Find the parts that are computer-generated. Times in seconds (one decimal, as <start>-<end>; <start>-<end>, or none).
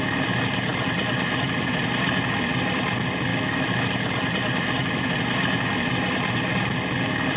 3.3-3.9